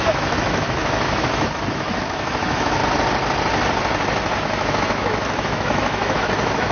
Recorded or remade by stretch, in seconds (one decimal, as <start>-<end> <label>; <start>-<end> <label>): 0.0-2.8 remade; 2.8-4.4 recorded; 4.4-6.7 remade

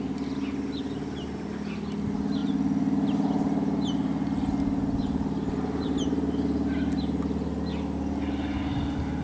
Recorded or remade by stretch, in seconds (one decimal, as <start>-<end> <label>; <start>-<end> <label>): 0.0-9.2 recorded